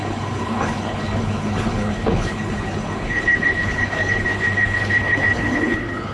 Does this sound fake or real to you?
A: fake